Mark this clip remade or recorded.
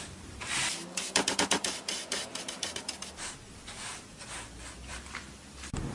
remade